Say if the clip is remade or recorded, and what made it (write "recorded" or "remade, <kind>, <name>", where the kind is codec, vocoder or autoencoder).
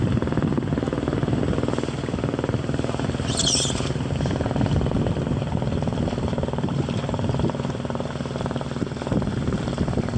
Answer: recorded